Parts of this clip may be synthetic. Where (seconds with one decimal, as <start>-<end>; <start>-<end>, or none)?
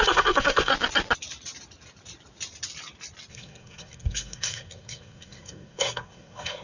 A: 0.0-0.7; 3.3-6.6